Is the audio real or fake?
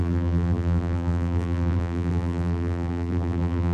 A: fake